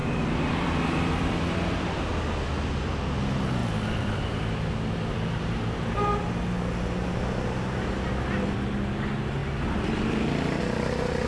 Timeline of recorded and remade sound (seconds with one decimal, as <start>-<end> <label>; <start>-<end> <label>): 0.0-2.0 remade; 2.0-3.6 recorded; 3.6-4.3 remade; 4.3-11.3 recorded